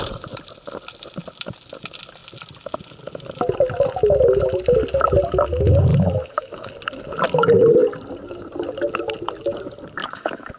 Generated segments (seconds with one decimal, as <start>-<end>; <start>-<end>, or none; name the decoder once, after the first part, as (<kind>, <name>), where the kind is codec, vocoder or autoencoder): 5.9-6.7 (autoencoder, DAC-VAE); 10.0-10.6